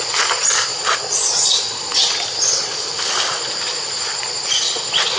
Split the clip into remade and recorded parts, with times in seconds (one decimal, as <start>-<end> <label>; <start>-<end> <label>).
0.0-5.2 recorded